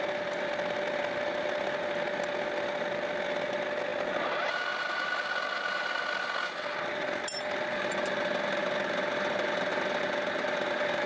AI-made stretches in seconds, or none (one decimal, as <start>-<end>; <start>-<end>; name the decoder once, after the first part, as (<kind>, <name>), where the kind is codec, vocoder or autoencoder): none